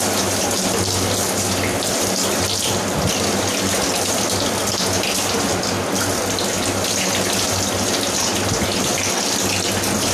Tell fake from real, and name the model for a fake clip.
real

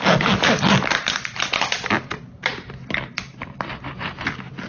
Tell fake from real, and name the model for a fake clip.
real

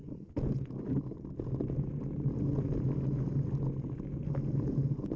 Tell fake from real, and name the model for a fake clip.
real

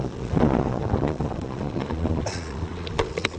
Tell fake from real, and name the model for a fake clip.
fake, vocoder, Vocos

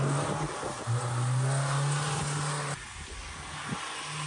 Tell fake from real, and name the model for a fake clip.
real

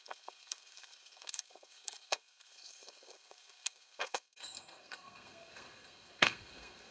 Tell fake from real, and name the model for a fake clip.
fake, codec, SNAC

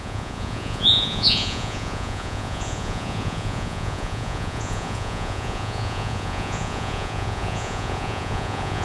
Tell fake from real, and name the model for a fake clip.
fake, vocoder, Vocos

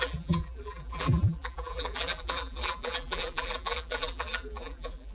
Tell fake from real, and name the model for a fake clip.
fake, vocoder, BigVGAN v2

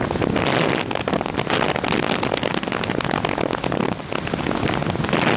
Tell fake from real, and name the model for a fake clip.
real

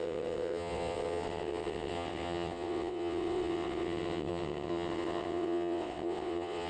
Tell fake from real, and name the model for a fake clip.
fake, vocoder, WaveNeXt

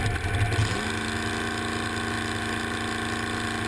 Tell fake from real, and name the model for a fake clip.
real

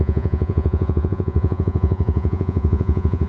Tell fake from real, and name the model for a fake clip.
fake, vocoder, Vocos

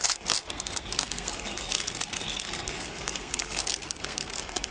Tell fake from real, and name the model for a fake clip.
fake, codec, SNAC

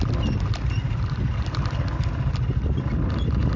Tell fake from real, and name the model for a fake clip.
real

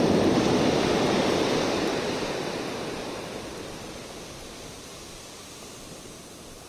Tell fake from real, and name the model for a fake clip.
real